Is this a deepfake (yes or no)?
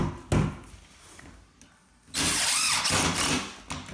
no